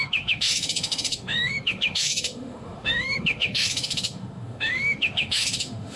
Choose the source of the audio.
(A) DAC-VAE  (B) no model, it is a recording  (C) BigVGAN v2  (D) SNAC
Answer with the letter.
A